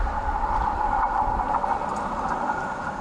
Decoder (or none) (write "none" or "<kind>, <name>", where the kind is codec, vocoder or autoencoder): none